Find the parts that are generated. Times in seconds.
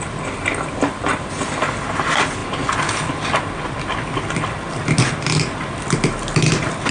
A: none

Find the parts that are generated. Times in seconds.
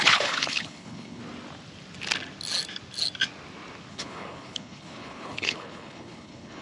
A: 0.0-1.2 (codec, HILCodec); 3.9-6.6